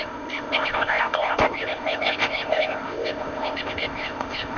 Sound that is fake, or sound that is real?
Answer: fake